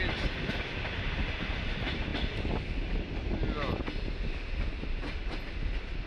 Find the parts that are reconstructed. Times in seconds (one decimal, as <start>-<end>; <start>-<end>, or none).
none